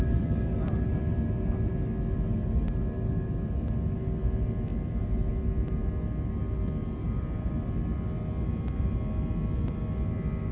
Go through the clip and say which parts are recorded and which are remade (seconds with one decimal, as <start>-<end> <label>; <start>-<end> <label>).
0.0-6.8 recorded; 6.8-7.5 remade; 7.5-10.5 recorded